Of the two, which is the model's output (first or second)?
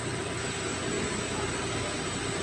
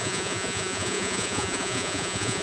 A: second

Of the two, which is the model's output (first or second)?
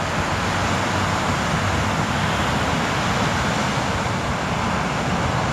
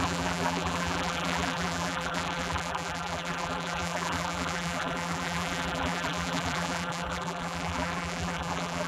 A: second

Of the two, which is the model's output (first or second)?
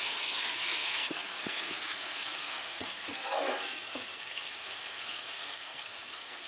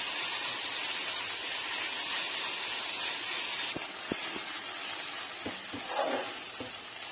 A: first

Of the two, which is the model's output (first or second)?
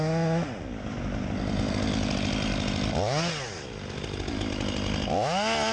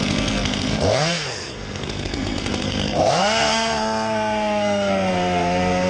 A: second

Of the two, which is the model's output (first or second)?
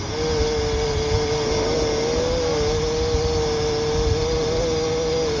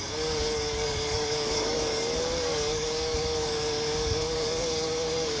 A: second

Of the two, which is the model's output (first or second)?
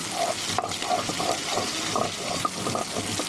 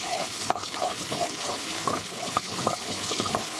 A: second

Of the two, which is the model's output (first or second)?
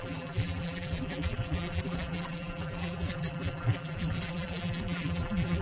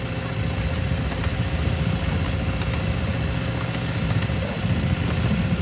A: first